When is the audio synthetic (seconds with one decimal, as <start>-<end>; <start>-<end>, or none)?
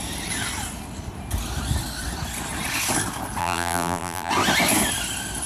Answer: 3.4-4.3